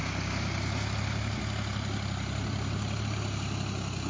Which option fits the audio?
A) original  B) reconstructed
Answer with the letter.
A